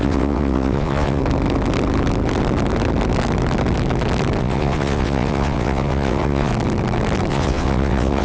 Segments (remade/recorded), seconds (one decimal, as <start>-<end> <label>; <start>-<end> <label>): 0.0-1.2 remade; 1.2-4.4 recorded; 4.4-6.5 remade; 6.5-7.3 recorded; 7.3-8.2 remade